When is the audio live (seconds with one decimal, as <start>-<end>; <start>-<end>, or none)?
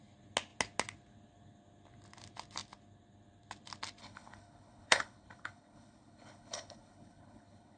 0.0-4.0